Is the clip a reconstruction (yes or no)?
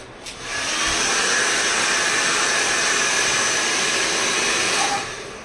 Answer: no